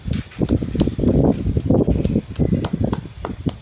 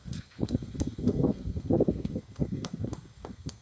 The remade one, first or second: second